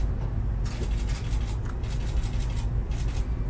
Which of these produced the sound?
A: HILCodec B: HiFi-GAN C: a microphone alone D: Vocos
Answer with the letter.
C